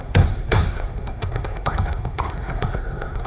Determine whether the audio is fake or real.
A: fake